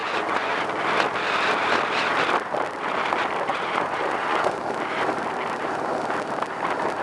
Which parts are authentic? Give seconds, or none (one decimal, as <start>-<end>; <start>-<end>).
0.7-3.5; 4.6-7.0